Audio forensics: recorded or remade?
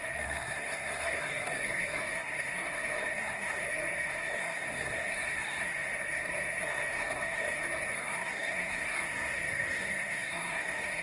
remade